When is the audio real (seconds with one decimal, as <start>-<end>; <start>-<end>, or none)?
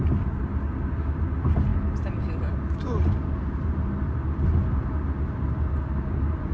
0.0-6.5